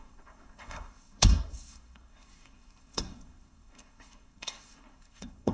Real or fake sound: fake